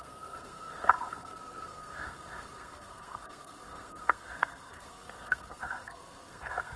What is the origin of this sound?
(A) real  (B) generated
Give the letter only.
B